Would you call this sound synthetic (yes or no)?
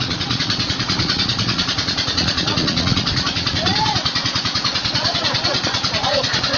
yes